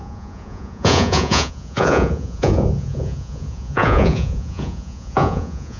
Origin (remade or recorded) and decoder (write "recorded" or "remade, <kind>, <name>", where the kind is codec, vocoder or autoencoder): remade, vocoder, Vocos